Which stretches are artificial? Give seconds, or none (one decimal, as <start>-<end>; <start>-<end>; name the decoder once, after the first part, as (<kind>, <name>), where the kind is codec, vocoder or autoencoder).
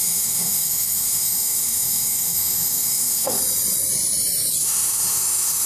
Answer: 0.0-3.4 (autoencoder, DAC-VAE); 4.6-5.7